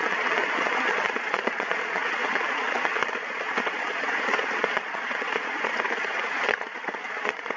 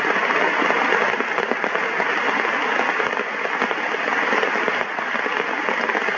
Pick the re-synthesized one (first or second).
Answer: first